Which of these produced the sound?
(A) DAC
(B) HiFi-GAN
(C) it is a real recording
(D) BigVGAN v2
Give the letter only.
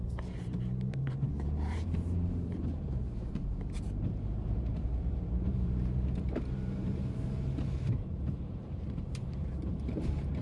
D